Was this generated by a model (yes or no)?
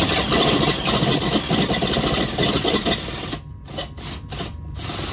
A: no